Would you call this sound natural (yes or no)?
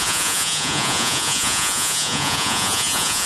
no